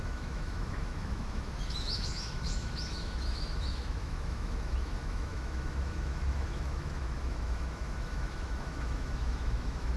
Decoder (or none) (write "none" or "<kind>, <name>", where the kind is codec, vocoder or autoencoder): autoencoder, DAC-VAE